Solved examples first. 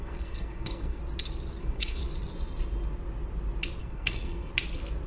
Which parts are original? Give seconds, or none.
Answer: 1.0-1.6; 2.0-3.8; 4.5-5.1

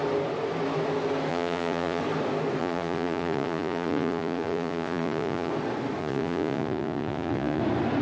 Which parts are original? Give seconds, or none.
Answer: 0.0-1.3; 2.0-2.6; 5.5-6.0; 7.6-8.0

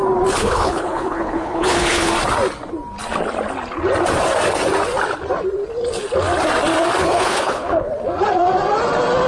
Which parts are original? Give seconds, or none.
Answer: 0.0-0.4; 2.1-7.0; 7.9-9.3

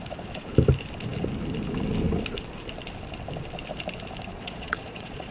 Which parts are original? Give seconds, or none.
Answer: 0.0-4.3

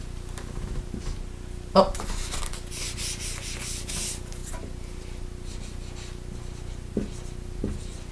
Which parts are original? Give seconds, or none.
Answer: 0.0-8.1

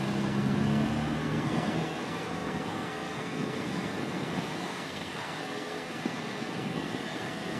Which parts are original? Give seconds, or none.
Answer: none

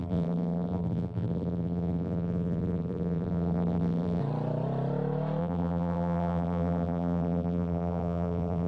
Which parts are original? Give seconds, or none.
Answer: 4.2-5.4